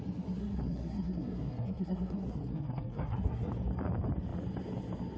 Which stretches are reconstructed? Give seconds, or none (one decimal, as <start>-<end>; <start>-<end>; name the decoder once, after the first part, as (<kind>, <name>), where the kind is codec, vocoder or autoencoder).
0.4-3.5 (codec, SNAC)